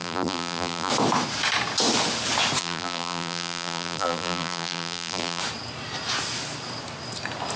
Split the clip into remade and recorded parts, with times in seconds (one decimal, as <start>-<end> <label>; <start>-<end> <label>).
0.0-0.9 remade; 0.9-2.6 recorded; 2.6-5.4 remade; 5.4-7.6 recorded